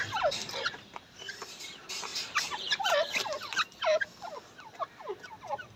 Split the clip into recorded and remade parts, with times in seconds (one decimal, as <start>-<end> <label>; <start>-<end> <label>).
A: 0.0-2.1 recorded; 2.1-2.8 remade; 2.8-5.8 recorded